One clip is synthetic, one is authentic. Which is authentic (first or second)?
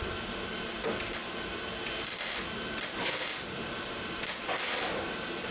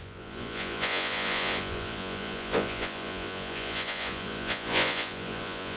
first